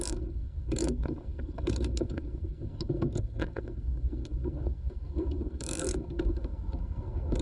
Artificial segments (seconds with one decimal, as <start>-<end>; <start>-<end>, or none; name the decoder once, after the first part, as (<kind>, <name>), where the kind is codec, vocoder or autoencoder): 0.0-7.4 (codec, SNAC)